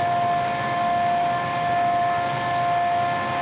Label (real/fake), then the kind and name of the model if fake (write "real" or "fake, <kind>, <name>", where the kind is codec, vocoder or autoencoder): real